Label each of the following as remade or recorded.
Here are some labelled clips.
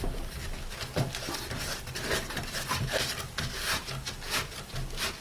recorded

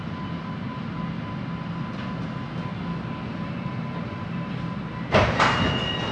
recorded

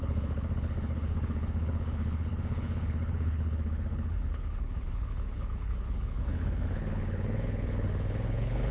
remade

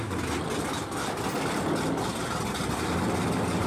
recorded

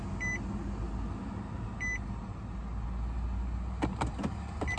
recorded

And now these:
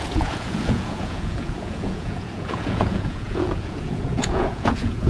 remade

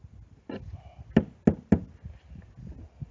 recorded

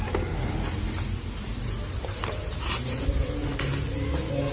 recorded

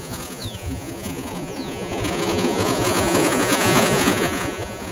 remade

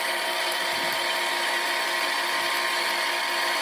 remade